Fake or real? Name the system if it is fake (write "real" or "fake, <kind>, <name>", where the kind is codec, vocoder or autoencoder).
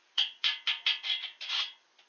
fake, vocoder, Vocos